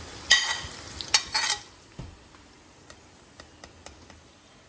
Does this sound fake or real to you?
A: real